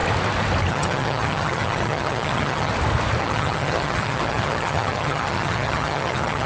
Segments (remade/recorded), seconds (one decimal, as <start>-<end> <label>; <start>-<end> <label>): 0.0-0.7 recorded; 0.7-2.7 remade; 2.7-3.2 recorded; 3.2-6.5 remade